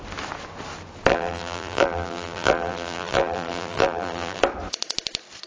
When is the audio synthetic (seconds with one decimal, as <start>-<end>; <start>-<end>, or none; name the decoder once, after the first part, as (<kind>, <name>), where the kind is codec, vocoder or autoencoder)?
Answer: 1.1-4.4 (vocoder, BigVGAN v2)